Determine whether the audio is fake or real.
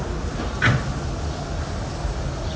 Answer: real